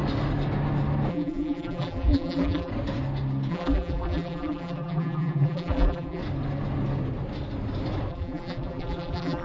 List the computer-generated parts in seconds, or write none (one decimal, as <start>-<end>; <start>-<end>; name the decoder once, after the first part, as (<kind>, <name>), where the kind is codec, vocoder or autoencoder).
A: 1.1-2.7 (vocoder, BigVGAN v2); 3.5-6.2; 8.1-9.4